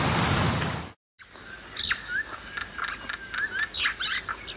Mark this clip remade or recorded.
recorded